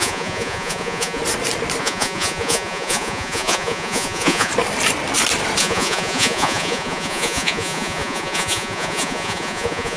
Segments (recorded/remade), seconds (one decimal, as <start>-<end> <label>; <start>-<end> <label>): 0.0-1.2 remade; 1.2-1.8 recorded; 1.8-4.5 remade; 4.5-5.6 recorded; 5.6-10.0 remade